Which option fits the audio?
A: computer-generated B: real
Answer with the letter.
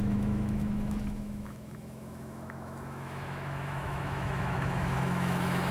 A